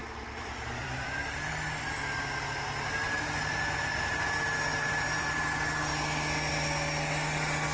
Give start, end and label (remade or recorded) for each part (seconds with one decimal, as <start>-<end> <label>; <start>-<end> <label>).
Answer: 0.0-1.5 remade; 1.5-4.7 recorded; 4.7-5.4 remade; 5.4-7.7 recorded